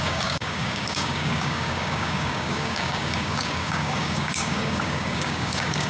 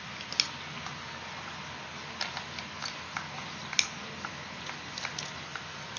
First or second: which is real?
second